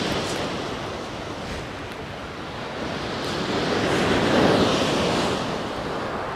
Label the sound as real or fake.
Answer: real